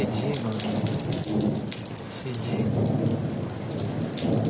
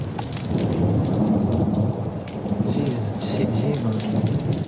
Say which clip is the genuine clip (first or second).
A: first